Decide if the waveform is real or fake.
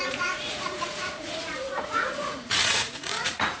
fake